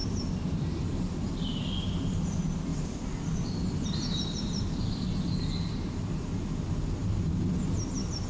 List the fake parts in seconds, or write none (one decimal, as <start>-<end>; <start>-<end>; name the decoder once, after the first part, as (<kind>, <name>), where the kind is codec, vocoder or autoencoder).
0.0-0.9 (vocoder, BigVGAN v2); 2.7-5.0